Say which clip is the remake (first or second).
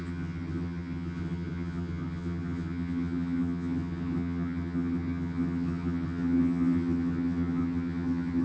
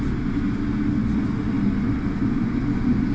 first